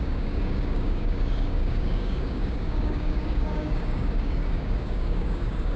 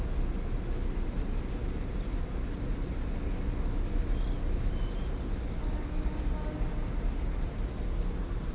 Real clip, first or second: second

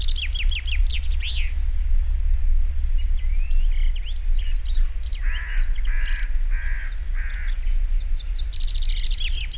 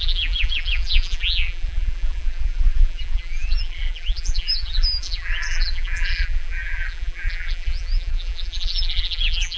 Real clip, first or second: first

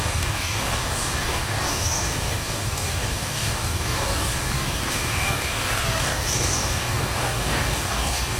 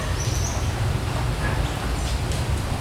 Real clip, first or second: second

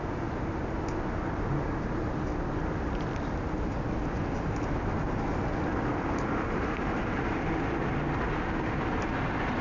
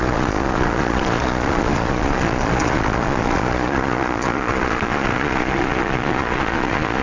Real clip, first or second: first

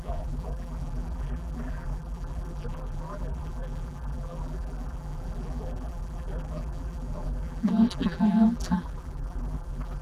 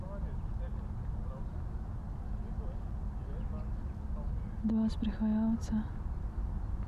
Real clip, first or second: second